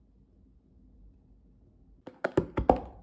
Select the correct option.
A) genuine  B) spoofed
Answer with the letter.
A